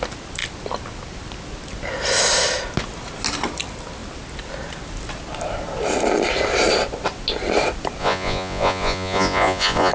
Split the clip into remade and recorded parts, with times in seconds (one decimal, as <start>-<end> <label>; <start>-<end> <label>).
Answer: 0.0-8.0 recorded; 8.0-9.9 remade